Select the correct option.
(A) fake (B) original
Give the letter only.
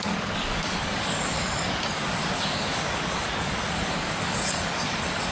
A